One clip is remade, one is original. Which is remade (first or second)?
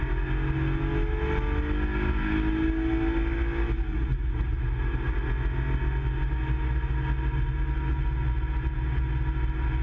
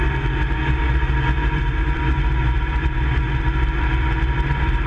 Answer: second